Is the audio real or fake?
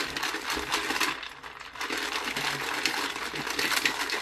real